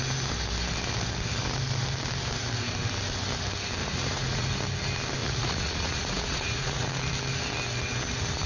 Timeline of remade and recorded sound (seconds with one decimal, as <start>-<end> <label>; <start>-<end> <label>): 0.0-3.8 recorded; 3.8-4.5 remade; 4.5-5.2 recorded; 5.2-6.9 remade; 6.9-8.5 recorded